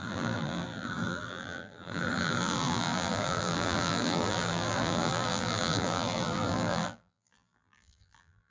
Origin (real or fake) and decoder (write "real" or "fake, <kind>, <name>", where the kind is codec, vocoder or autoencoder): fake, vocoder, BigVGAN v2